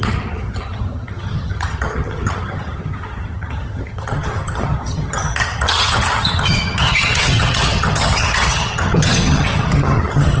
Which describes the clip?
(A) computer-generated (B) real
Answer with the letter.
A